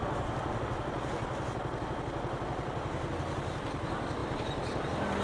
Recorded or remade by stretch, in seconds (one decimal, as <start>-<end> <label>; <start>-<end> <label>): 0.0-5.2 recorded